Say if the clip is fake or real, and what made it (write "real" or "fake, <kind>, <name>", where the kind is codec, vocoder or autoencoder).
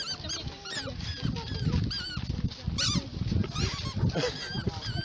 real